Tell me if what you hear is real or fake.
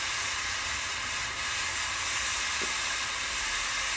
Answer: real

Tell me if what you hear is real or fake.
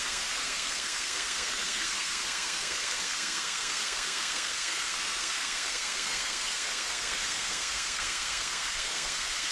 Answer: fake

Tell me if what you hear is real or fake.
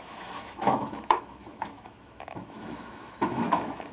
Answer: fake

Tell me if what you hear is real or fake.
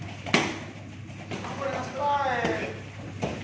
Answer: real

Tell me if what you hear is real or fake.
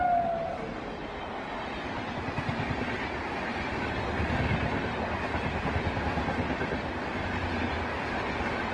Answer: real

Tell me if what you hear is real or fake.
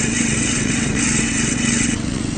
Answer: fake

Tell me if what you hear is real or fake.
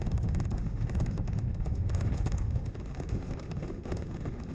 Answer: fake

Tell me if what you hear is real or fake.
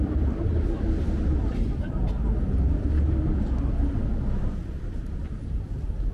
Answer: real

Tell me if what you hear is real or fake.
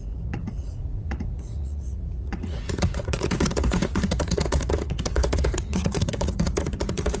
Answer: fake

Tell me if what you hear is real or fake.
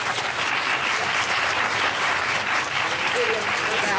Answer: fake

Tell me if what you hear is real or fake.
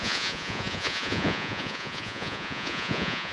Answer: fake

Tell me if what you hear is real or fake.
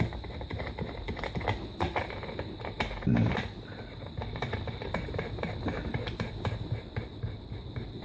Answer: real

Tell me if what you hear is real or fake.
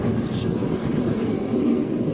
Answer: fake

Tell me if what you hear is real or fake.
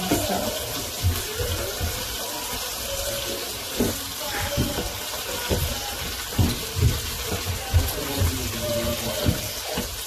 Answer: real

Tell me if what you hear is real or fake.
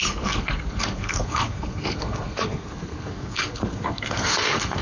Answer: fake